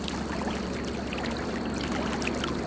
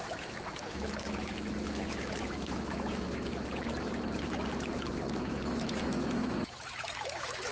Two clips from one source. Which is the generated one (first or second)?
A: second